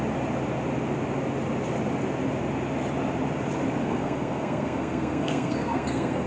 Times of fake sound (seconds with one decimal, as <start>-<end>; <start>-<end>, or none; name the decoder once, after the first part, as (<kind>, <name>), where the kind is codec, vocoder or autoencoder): 3.8-6.3 (codec, SNAC)